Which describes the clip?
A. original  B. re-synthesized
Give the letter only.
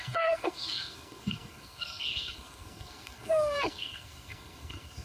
B